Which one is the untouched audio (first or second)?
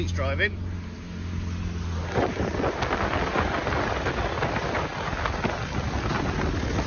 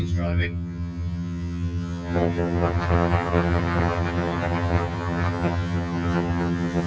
first